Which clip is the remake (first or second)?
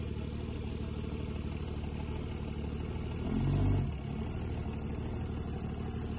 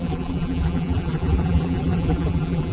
second